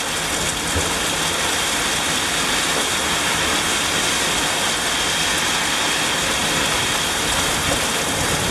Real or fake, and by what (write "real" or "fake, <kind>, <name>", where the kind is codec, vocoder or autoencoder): real